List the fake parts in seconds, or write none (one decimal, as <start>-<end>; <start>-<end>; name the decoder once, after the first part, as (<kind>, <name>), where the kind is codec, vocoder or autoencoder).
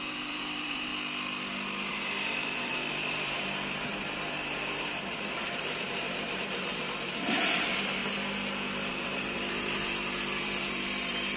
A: 0.0-0.9 (vocoder, BigVGAN v2); 1.9-8.0; 8.9-11.4